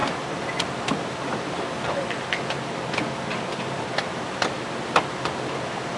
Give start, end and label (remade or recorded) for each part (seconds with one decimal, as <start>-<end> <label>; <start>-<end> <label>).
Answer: 0.0-6.0 recorded